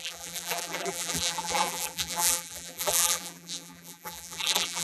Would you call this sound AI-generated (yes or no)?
yes